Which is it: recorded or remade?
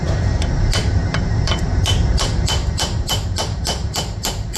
remade